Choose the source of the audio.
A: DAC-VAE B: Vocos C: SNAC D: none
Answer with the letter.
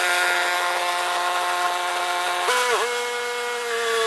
D